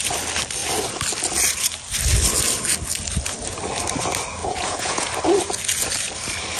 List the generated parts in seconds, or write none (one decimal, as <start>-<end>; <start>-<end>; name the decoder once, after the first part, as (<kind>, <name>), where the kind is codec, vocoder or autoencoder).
4.4-5.1 (vocoder, Vocos)